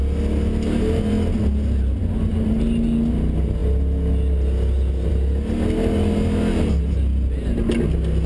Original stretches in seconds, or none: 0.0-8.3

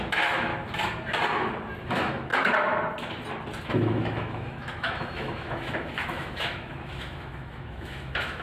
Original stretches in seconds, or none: 0.5-1.8; 2.3-3.6

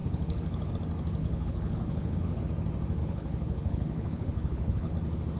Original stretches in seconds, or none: 0.7-1.2; 2.4-3.0; 4.9-5.4

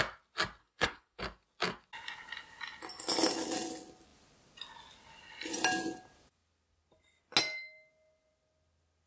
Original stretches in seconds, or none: 0.0-0.6; 1.2-9.1

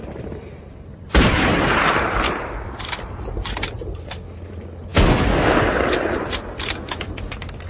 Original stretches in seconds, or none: 4.9-7.7

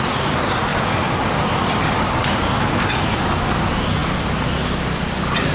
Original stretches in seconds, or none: 0.0-0.7; 3.2-5.5

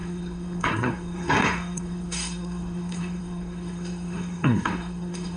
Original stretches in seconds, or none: none